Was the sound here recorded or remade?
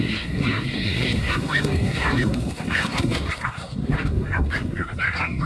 remade